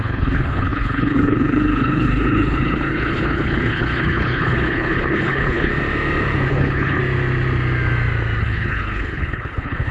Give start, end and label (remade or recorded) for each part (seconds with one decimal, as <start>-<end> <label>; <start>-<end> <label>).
0.0-5.7 remade; 5.7-6.5 recorded; 6.5-7.0 remade; 7.0-8.4 recorded; 8.4-9.9 remade